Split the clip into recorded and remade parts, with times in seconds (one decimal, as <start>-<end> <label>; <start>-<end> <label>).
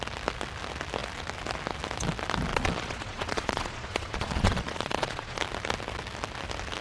0.0-2.5 recorded; 2.5-5.4 remade; 5.4-6.8 recorded